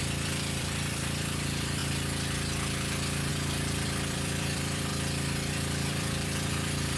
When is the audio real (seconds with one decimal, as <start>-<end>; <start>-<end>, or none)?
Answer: 1.8-3.3; 4.9-5.5